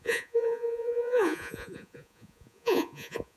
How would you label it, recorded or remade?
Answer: remade